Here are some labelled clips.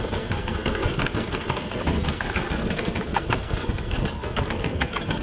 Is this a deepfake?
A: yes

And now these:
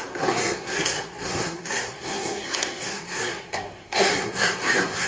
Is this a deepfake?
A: yes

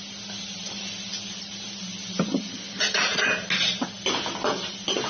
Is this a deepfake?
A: no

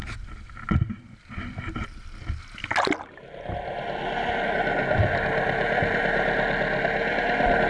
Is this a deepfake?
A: no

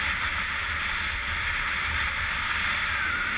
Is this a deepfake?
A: no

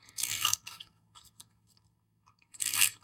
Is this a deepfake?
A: yes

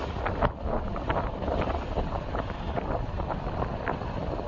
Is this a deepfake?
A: no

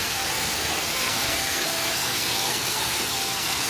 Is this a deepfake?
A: yes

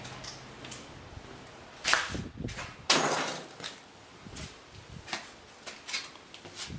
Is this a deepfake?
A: no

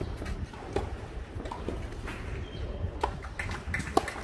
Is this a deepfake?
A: no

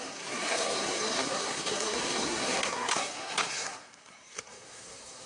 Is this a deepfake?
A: yes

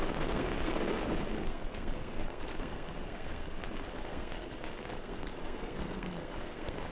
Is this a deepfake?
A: yes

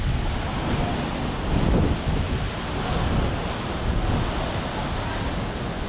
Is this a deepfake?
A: no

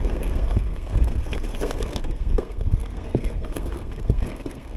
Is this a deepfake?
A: yes